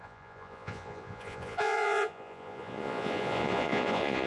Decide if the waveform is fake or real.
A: fake